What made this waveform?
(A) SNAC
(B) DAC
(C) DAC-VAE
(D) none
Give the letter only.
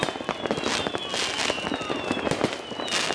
D